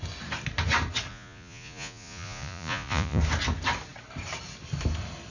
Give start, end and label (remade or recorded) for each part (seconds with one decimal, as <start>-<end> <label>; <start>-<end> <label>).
0.0-1.1 recorded; 1.1-3.2 remade; 3.2-5.3 recorded